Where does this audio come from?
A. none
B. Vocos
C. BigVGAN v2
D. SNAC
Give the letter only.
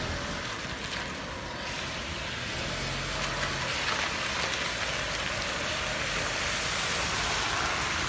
A